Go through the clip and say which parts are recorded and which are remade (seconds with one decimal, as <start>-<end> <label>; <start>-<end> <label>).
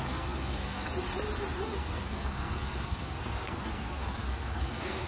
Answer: 0.0-0.9 remade; 0.9-1.6 recorded; 1.6-5.1 remade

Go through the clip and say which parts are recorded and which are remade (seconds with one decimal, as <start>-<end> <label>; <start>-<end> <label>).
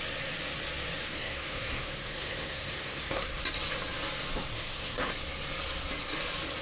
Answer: 0.0-1.0 recorded; 1.0-3.4 remade; 3.4-4.5 recorded; 4.5-5.1 remade; 5.1-6.6 recorded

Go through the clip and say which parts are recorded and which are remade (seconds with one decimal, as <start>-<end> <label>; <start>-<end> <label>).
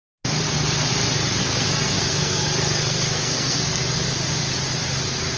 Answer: 0.0-1.4 recorded; 1.4-3.8 remade; 3.8-5.4 recorded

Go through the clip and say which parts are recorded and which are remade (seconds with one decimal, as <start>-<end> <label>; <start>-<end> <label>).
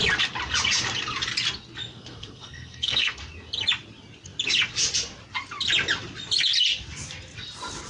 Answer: 0.0-1.9 recorded; 1.9-3.2 remade; 3.2-7.9 recorded